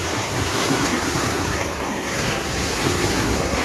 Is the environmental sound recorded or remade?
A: remade